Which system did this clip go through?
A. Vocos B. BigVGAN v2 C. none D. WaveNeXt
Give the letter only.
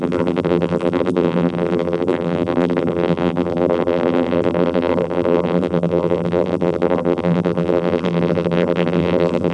B